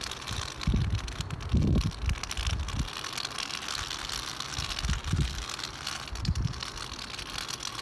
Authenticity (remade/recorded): recorded